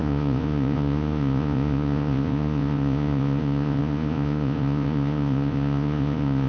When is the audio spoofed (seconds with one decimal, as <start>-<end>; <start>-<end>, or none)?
0.0-6.5